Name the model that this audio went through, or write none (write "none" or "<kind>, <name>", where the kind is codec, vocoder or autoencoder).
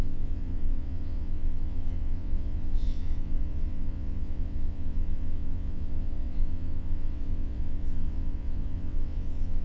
vocoder, WaveNeXt